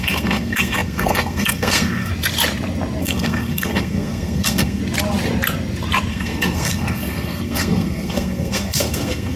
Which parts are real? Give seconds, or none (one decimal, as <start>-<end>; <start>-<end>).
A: 2.1-3.0; 4.8-6.1

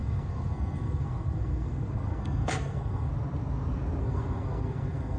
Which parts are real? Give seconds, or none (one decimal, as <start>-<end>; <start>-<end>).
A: 3.1-4.0

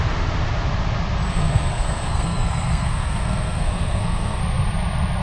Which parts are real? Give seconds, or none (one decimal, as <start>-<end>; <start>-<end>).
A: 0.0-1.3; 4.4-5.2

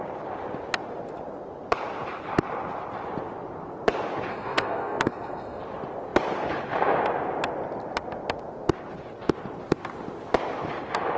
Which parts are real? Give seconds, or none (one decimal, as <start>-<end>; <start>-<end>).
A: 0.0-4.3; 5.6-11.2

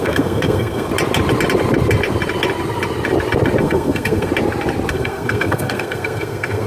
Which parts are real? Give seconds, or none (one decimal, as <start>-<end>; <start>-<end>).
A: 0.9-3.6; 4.3-4.9